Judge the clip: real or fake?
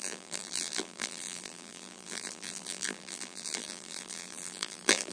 fake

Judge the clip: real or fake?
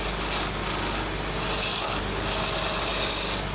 real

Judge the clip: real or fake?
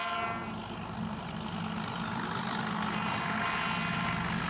real